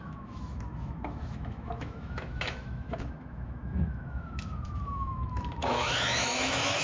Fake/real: fake